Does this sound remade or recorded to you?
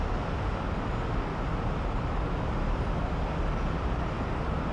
recorded